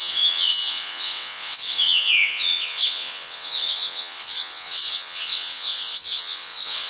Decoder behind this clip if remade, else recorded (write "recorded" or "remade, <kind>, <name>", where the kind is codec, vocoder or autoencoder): remade, vocoder, WaveNeXt